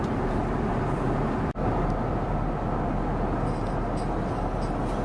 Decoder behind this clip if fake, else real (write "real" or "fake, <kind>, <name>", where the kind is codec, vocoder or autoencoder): real